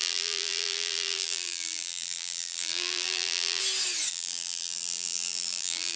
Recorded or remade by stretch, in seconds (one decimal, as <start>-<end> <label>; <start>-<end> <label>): 0.0-3.6 remade; 3.6-4.1 recorded; 4.1-6.0 remade